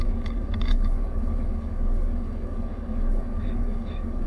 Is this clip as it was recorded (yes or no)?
no